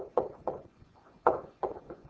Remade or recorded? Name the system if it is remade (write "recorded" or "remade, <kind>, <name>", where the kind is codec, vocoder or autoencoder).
remade, vocoder, Vocos